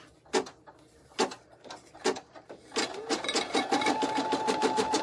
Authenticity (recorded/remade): recorded